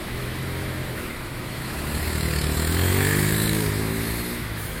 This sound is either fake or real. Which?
fake